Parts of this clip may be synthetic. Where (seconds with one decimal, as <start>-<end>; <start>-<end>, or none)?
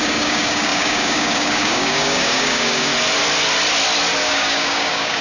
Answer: 0.0-2.9; 4.2-5.2